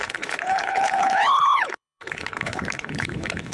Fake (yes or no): yes